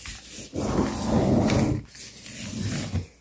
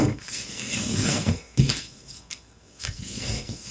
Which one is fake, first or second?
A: second